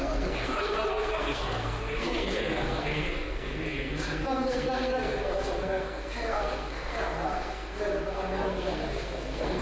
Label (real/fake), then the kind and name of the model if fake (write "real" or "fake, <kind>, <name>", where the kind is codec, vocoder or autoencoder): fake, codec, SNAC